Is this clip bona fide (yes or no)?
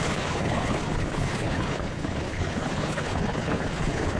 no